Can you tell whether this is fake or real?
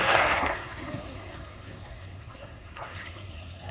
fake